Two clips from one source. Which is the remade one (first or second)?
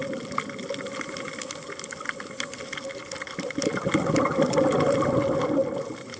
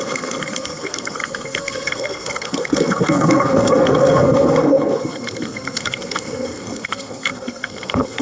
second